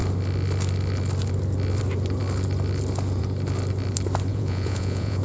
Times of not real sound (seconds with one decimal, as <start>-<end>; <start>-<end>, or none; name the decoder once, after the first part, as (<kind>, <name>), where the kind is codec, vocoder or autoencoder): 4.3-5.2 (vocoder, Vocos)